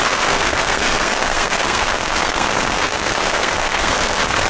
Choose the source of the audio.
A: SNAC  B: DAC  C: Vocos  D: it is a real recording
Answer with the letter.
A